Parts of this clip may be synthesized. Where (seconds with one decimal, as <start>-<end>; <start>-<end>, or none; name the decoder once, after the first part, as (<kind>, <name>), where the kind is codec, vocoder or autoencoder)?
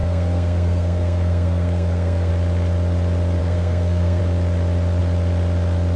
0.0-2.3 (codec, SNAC); 3.4-4.2